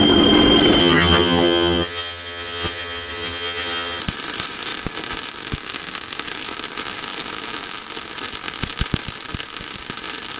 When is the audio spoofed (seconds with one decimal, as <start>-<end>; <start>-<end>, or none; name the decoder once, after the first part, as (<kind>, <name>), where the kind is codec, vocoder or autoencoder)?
0.8-4.0 (vocoder, HiFi-GAN)